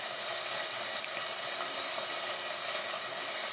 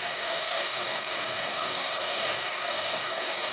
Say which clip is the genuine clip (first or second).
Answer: first